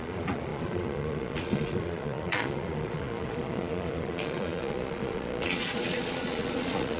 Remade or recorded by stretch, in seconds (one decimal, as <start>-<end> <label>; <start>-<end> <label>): 0.0-7.0 remade